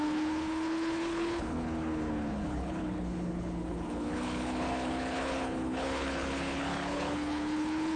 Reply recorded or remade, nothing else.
remade